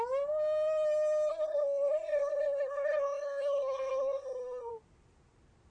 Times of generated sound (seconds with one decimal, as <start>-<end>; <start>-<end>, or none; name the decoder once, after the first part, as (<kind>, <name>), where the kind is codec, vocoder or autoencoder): 1.3-4.7 (codec, SNAC)